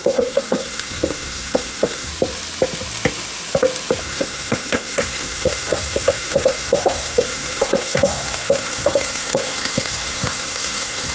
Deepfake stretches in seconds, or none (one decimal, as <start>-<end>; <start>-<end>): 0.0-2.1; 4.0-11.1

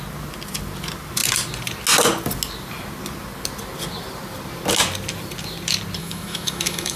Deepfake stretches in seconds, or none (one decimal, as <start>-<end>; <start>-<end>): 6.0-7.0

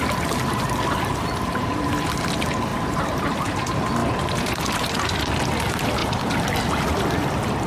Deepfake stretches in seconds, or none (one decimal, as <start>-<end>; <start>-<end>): 2.7-3.2; 6.0-6.8